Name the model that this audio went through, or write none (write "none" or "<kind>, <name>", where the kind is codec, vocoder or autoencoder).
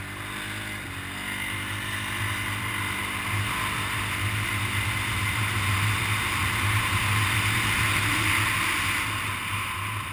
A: none